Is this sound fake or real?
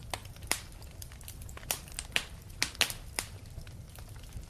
real